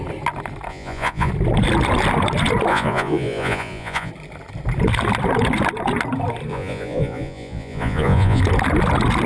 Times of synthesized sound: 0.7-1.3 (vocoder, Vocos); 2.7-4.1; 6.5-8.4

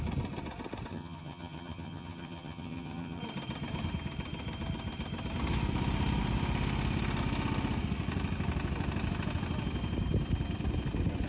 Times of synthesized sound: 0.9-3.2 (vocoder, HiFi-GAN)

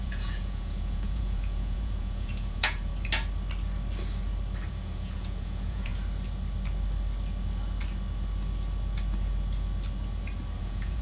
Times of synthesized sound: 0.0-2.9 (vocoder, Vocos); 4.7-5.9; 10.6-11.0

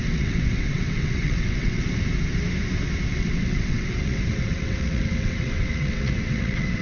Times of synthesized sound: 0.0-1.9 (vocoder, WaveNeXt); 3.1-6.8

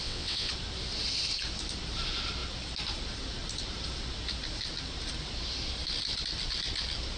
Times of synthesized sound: 0.0-0.5 (vocoder, WaveNeXt)